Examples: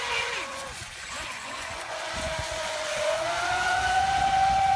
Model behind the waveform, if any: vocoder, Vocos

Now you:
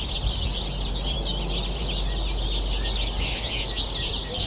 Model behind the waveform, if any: none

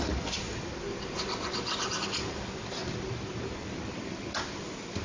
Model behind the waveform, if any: none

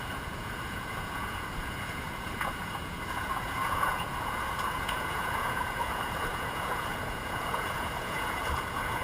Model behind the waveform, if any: vocoder, Vocos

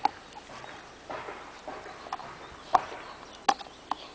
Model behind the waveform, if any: none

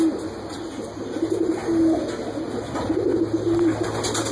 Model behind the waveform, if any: none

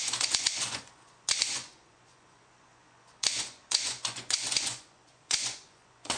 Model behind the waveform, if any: vocoder, Vocos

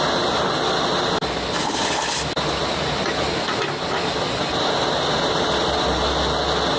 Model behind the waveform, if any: none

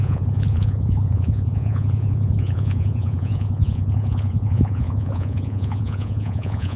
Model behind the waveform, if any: vocoder, Vocos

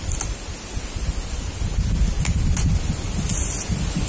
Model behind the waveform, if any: none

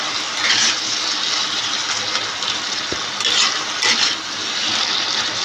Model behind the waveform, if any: none